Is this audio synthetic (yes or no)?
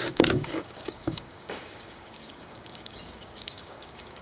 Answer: yes